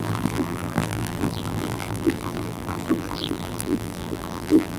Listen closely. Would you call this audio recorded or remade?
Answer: remade